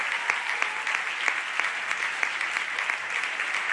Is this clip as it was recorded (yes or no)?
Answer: yes